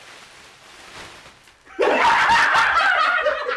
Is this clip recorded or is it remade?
recorded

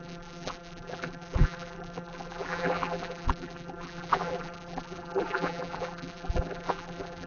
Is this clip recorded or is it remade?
remade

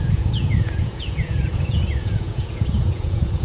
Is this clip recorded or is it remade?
remade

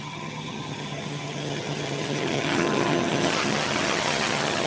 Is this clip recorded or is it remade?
remade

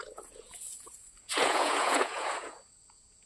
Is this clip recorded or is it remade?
remade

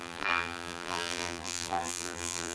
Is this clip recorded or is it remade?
remade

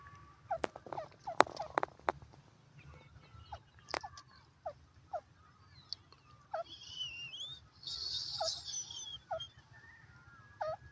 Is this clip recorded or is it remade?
recorded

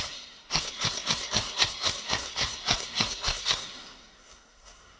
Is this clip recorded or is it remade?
remade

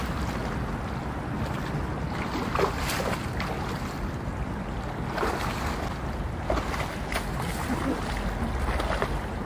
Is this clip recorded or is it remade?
recorded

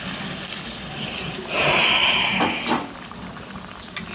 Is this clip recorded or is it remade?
recorded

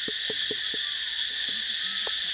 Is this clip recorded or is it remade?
recorded